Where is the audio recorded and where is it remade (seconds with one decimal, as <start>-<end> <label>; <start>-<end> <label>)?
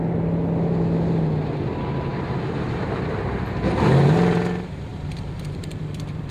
0.0-2.1 recorded; 2.1-3.6 remade; 3.6-4.9 recorded; 4.9-6.3 remade